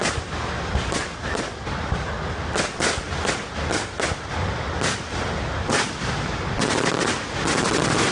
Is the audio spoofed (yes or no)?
no